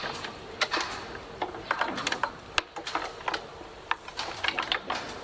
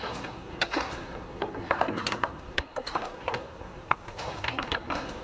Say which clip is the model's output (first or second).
second